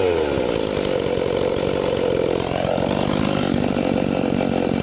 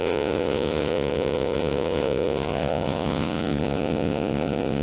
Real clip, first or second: first